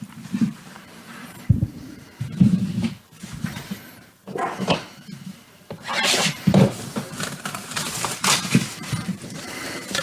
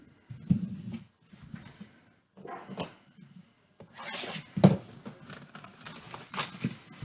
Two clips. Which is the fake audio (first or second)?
first